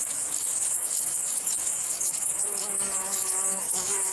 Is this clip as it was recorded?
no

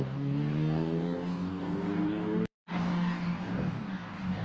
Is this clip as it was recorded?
no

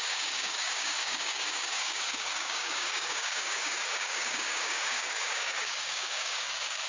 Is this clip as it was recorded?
no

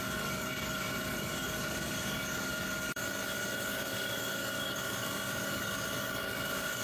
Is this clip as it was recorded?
no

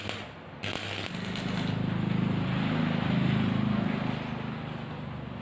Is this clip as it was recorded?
yes